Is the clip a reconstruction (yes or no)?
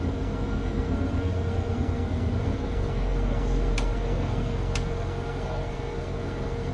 yes